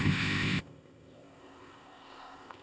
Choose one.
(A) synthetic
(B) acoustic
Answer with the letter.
A